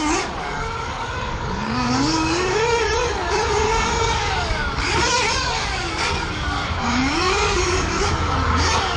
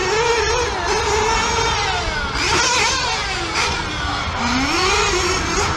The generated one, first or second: first